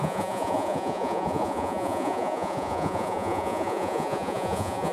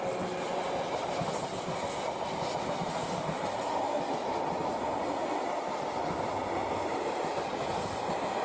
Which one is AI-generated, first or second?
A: first